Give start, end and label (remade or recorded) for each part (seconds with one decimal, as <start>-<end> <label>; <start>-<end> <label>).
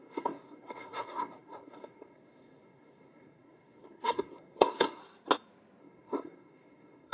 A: 0.0-5.0 remade; 5.0-5.8 recorded; 5.8-7.1 remade